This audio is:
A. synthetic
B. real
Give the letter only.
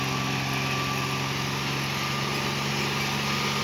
B